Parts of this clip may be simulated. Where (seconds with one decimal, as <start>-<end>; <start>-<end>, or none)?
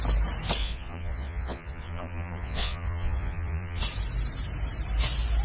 0.6-3.8